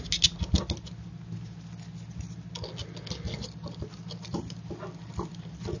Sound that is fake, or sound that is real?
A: real